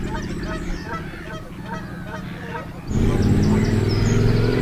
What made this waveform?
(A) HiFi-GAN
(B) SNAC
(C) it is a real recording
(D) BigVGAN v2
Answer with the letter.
C